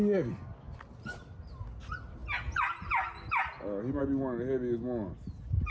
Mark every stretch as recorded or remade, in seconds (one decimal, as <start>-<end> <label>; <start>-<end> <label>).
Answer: 0.0-5.7 recorded